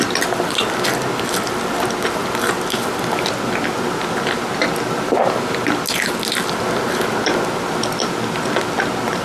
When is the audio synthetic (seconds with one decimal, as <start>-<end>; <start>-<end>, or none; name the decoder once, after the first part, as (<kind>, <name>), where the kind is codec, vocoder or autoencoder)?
none